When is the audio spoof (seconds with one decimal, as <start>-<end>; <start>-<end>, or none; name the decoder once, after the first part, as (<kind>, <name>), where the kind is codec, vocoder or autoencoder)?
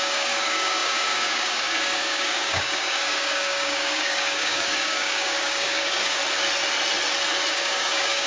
0.0-6.2 (codec, DAC); 7.5-8.3